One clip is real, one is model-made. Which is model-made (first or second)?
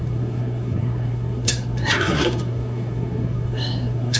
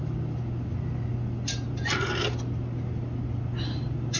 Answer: first